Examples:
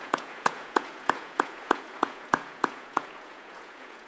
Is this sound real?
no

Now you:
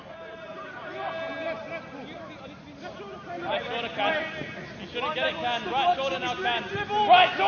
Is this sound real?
yes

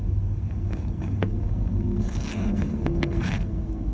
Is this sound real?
no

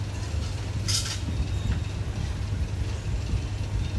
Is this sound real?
yes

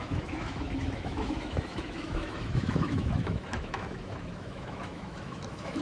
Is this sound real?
no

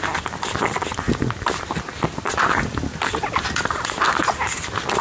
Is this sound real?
yes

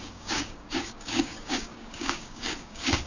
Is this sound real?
no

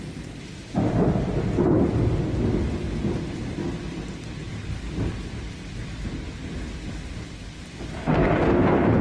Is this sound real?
yes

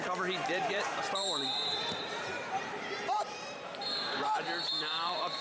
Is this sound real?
no